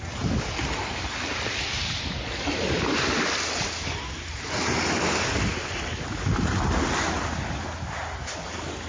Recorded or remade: recorded